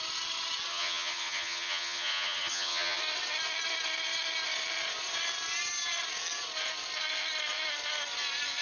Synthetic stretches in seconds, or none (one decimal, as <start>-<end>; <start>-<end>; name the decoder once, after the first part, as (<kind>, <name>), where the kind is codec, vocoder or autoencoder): 0.7-3.0 (vocoder, HiFi-GAN)